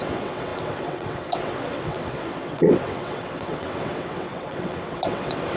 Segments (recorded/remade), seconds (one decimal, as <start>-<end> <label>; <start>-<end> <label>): 0.0-5.6 remade